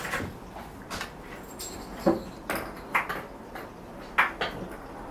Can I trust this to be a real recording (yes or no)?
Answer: yes